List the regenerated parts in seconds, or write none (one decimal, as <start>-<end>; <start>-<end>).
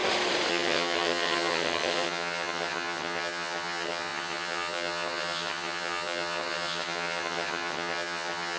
0.5-8.6